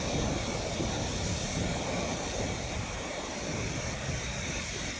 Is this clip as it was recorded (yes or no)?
yes